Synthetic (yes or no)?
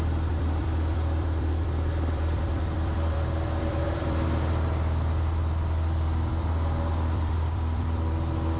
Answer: yes